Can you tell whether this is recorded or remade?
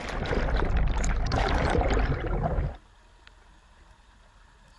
remade